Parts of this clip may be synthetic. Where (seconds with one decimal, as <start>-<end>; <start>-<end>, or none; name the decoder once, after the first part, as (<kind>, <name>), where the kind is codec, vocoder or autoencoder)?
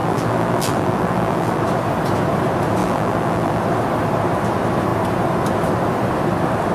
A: 0.0-1.6 (vocoder, BigVGAN v2); 2.8-3.6